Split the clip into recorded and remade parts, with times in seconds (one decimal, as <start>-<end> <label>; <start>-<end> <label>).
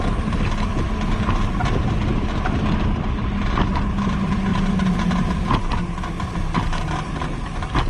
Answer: 0.0-7.9 recorded